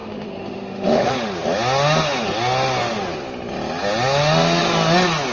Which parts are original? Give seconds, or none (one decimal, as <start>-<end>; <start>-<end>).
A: 1.1-5.3